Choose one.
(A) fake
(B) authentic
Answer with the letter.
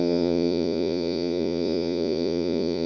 A